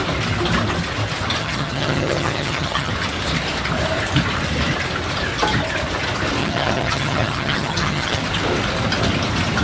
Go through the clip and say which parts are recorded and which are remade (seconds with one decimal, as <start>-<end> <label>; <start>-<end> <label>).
0.0-1.4 recorded; 1.4-2.9 remade; 2.9-6.4 recorded; 6.4-8.2 remade; 8.2-9.6 recorded